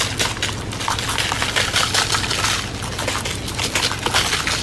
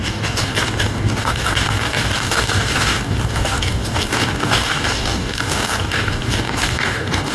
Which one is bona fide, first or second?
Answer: first